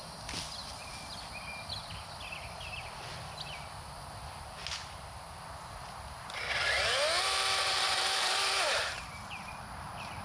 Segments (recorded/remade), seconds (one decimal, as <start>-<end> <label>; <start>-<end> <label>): 0.0-7.6 recorded; 7.6-9.5 remade; 9.5-10.2 recorded